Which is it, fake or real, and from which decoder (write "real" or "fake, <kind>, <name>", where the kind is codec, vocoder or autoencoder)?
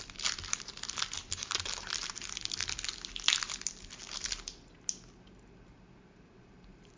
real